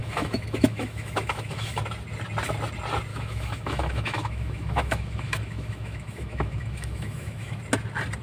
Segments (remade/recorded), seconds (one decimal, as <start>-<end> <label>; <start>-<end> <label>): 0.0-1.8 remade; 1.8-3.1 recorded; 3.1-7.6 remade; 7.6-8.2 recorded